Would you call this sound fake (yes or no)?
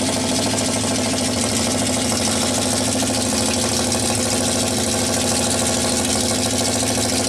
no